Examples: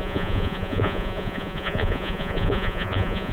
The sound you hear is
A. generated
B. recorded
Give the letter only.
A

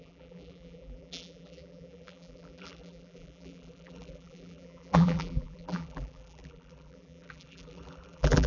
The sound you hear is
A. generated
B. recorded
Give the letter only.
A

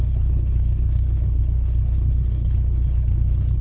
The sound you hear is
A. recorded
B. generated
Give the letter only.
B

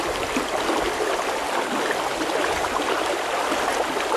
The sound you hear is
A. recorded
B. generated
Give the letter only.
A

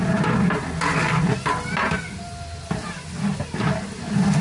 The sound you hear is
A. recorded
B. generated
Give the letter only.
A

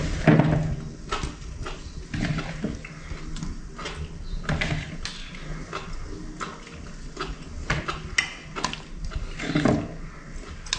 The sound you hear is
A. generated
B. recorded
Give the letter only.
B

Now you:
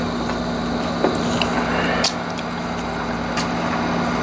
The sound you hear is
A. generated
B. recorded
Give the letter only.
B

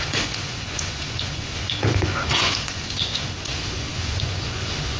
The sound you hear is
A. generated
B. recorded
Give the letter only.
A